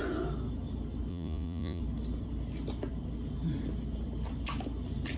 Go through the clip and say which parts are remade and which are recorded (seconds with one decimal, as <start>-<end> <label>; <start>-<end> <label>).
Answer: 0.0-1.1 recorded; 1.1-1.8 remade; 1.8-5.2 recorded